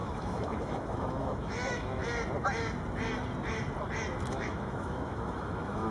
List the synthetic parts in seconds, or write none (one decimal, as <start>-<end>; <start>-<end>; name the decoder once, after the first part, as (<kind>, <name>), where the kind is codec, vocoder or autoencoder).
0.0-2.0 (autoencoder, DAC-VAE); 4.3-5.9